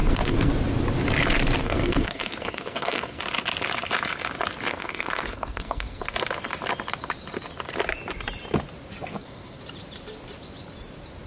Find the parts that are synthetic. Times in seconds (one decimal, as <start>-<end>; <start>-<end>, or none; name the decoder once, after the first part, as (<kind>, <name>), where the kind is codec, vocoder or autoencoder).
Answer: 0.0-0.5 (codec, SNAC); 1.6-3.2; 4.7-6.0; 9.1-9.6